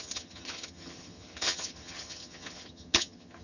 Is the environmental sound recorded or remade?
remade